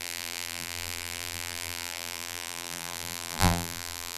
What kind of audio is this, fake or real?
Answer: fake